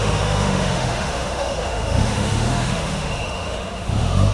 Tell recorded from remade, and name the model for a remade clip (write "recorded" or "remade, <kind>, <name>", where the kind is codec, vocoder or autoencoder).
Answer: remade, autoencoder, DAC-VAE